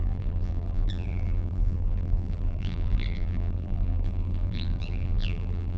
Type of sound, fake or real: fake